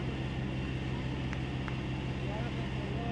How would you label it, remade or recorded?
recorded